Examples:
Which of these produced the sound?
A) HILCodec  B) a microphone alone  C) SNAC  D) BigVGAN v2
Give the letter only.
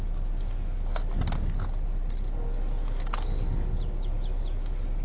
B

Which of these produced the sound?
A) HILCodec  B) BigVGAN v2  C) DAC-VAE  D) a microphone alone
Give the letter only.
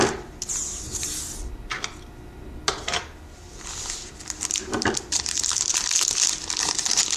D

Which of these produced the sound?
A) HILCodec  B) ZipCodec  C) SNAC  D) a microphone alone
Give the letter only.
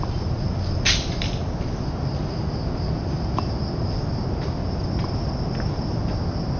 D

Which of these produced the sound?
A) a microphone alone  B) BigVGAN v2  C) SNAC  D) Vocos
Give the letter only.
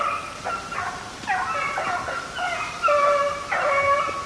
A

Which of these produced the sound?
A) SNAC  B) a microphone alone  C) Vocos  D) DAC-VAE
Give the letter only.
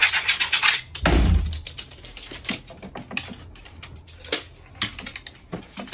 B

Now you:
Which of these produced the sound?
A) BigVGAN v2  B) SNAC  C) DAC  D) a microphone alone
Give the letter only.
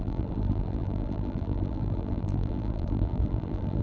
A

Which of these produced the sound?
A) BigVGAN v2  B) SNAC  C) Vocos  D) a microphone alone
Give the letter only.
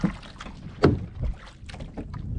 D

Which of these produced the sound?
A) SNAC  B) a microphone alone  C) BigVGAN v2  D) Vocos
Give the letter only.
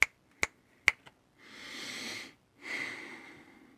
B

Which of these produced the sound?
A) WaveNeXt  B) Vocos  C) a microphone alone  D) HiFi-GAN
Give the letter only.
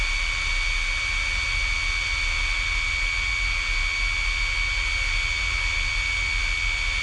C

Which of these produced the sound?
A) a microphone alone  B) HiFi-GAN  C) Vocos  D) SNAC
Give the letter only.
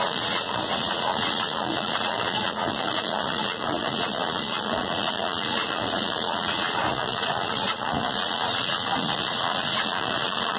C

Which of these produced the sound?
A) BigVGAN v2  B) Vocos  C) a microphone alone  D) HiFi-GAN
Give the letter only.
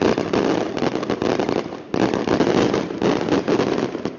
C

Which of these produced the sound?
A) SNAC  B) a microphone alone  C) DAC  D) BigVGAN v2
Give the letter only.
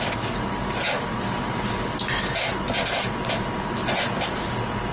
B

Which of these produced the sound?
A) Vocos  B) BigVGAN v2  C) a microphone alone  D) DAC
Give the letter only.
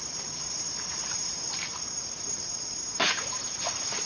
B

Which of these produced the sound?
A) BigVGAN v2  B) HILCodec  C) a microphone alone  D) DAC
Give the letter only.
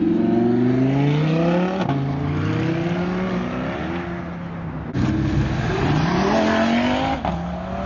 C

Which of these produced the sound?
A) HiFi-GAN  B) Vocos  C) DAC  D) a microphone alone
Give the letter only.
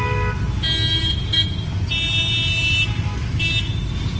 D